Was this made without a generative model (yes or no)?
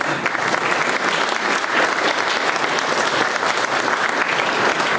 yes